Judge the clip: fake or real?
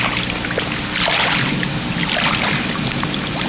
real